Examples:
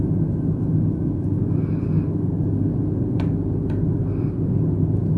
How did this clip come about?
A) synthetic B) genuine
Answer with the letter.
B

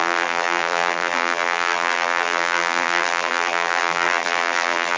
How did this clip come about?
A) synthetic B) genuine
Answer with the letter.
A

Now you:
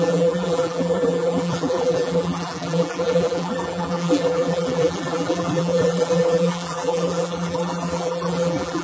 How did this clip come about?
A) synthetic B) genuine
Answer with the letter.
A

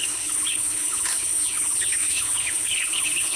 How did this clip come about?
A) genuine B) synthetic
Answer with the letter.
B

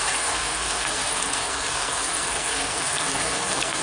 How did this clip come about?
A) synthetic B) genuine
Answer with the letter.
A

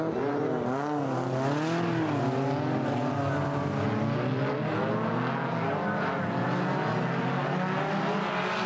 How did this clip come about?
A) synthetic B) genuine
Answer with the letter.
B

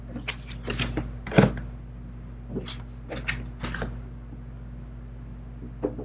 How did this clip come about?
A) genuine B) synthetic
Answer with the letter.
A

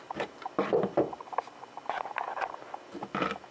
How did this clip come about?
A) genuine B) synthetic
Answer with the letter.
A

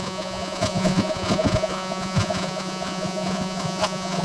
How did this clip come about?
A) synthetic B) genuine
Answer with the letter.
A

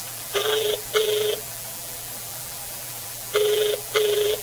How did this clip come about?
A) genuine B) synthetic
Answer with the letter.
B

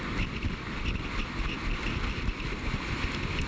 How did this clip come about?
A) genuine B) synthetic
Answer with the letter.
A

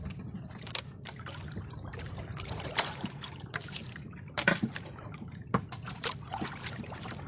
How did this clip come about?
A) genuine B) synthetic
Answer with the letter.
B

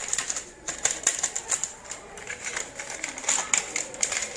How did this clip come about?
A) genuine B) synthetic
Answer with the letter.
A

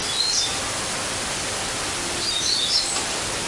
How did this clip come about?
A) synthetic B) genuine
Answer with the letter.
A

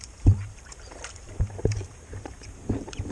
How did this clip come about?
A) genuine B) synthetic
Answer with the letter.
B